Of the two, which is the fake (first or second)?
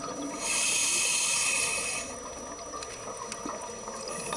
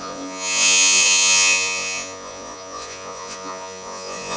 second